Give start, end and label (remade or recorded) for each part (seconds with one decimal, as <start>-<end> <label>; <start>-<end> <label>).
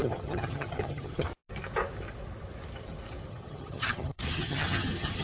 0.0-1.3 remade; 1.3-3.3 recorded; 3.3-5.2 remade